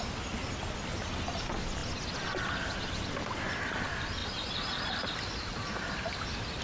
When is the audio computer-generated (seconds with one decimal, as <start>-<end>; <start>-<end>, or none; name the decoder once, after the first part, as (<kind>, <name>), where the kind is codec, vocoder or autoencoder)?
none